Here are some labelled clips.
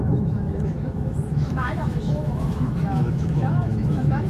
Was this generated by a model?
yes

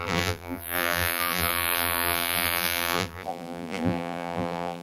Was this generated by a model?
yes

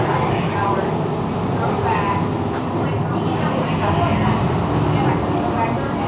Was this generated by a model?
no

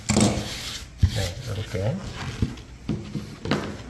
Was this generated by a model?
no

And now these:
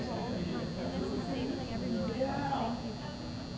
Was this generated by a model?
no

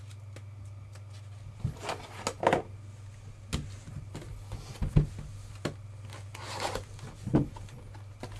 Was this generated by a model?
no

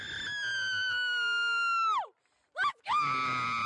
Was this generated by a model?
no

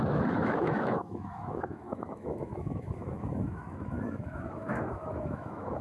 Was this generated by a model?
yes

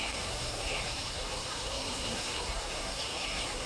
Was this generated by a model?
yes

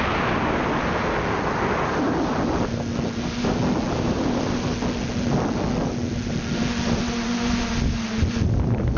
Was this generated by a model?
no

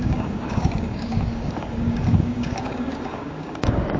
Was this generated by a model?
yes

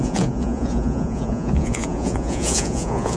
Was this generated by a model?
yes